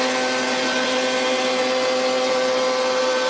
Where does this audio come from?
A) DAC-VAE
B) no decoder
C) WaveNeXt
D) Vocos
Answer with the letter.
B